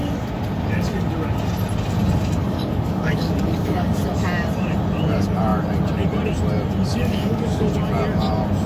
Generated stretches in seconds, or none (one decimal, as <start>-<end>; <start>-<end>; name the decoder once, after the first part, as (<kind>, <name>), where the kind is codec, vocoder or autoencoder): 2.4-4.0 (codec, DAC); 6.9-7.7